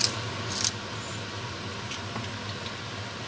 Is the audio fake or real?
real